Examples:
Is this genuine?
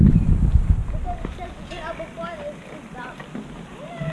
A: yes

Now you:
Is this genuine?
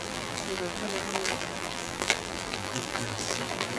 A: no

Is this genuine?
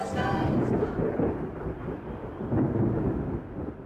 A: yes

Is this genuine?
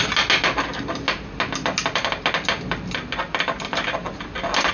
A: yes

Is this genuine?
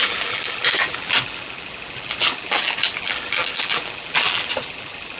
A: no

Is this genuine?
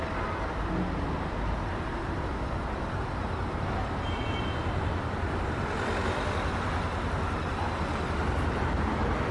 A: yes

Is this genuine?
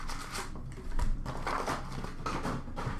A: yes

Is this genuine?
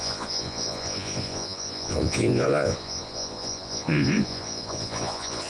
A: no